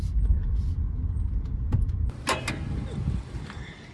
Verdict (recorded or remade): recorded